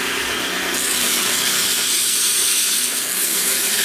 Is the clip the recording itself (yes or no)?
no